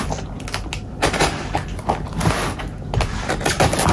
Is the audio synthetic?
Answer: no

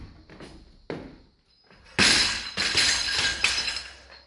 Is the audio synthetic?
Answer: no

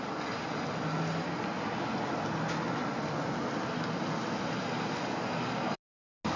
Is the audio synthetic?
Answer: no